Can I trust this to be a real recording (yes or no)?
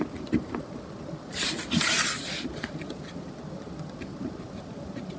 yes